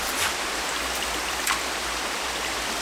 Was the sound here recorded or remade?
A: recorded